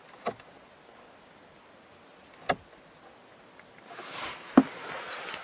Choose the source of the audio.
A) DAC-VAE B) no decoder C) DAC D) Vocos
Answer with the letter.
B